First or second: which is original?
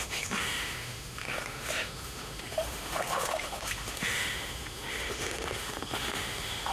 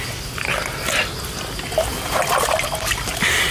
second